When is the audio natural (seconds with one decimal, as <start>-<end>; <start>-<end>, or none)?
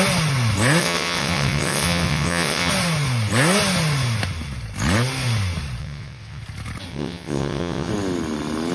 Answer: 0.0-0.8; 2.7-5.8; 6.4-6.9; 7.9-8.7